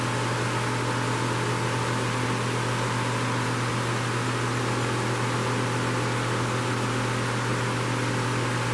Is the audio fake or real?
real